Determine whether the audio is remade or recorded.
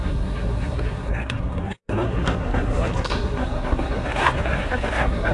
remade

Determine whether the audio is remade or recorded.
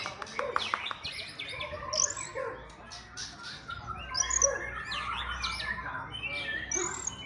recorded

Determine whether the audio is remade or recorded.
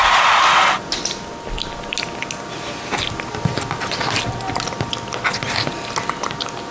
recorded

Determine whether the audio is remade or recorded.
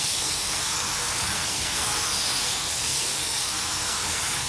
remade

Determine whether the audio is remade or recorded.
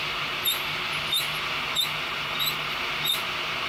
recorded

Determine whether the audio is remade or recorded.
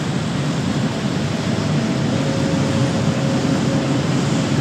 recorded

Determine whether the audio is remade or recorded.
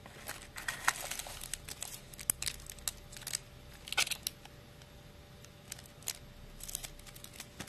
recorded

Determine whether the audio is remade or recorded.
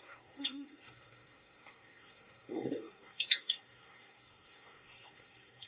remade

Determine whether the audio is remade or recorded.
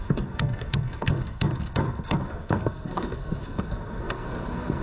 remade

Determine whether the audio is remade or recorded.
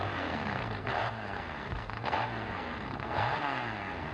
remade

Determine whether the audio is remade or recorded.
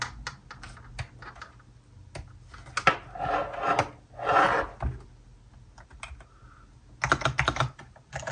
recorded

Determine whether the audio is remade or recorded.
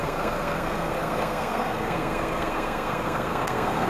remade